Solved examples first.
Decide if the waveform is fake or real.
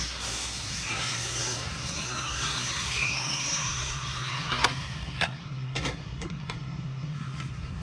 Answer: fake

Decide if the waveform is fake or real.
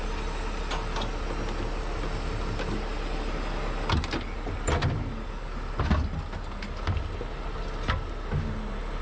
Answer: real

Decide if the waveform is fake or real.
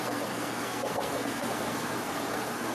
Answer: fake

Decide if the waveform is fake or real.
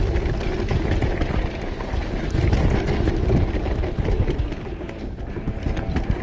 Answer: real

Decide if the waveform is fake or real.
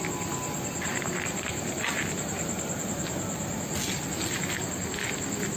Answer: real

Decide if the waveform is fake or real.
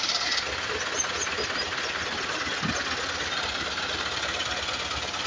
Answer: real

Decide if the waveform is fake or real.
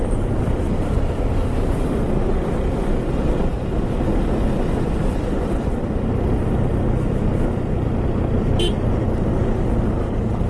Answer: real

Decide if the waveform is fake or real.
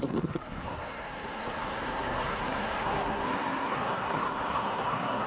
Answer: fake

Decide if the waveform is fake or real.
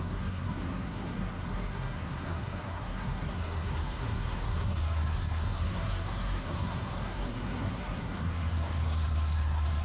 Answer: fake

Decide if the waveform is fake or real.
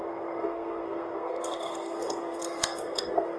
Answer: fake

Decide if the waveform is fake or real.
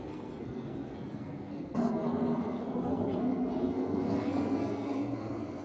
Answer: fake